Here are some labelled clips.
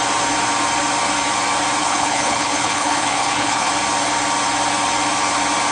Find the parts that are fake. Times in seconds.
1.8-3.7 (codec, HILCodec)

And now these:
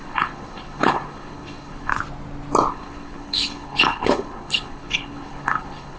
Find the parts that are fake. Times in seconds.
0.0-1.9 (codec, HILCodec); 2.7-6.0

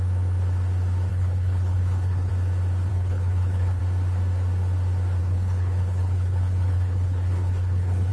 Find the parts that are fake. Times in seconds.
1.1-2.3 (codec, HILCodec); 2.9-3.8; 5.2-8.1

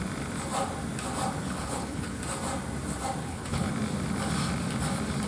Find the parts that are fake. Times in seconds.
1.4-2.2 (codec, HILCodec); 3.2-3.7

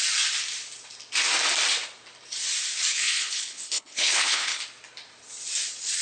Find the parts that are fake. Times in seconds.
2.9-4.6 (codec, HILCodec)

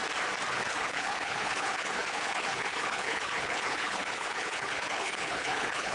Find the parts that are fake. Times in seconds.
0.5-5.9 (codec, HILCodec)